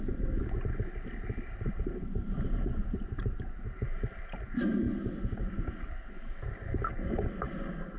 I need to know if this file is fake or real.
real